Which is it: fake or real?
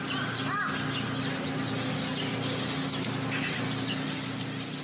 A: real